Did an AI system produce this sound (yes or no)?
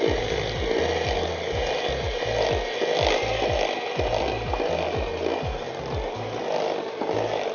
no